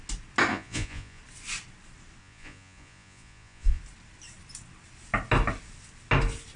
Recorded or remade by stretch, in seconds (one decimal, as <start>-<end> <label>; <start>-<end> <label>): 0.0-0.5 recorded; 0.5-1.2 remade; 1.2-2.2 recorded; 2.2-3.8 remade; 3.8-6.6 recorded